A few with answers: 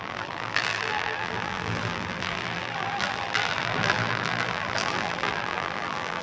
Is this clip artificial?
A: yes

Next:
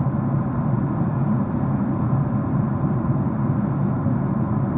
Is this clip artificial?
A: no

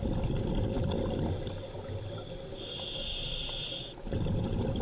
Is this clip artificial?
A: no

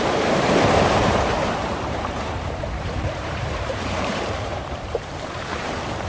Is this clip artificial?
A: yes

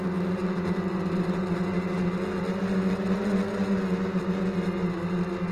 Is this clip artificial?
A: no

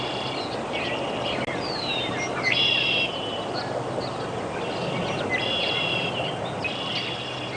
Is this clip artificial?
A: no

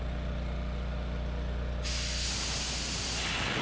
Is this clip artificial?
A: no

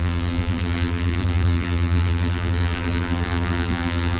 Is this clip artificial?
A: yes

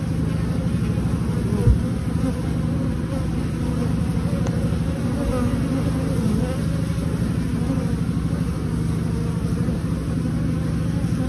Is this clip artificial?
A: no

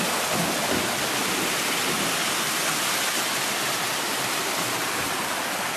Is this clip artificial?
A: no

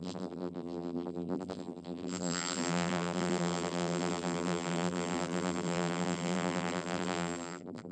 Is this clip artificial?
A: yes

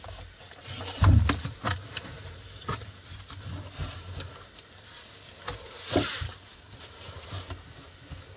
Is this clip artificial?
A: yes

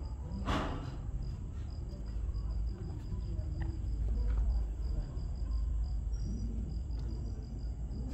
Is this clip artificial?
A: yes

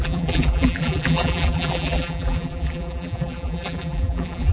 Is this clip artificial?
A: yes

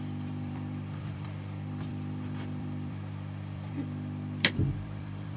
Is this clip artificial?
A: yes